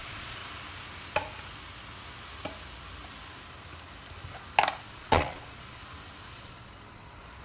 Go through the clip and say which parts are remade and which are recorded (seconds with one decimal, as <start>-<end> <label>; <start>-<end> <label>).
0.0-0.4 remade; 0.4-4.8 recorded; 4.8-5.8 remade; 5.8-6.3 recorded; 6.3-7.4 remade